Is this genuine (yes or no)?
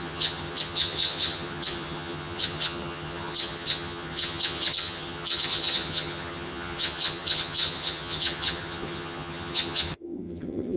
no